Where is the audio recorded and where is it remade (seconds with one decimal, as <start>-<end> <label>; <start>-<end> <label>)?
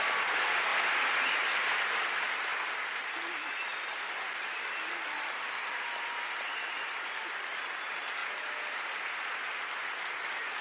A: 0.0-0.7 remade; 0.7-1.7 recorded; 1.7-2.5 remade; 2.5-4.8 recorded; 4.8-8.2 remade; 8.2-10.6 recorded